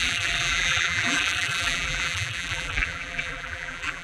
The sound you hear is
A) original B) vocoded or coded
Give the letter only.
B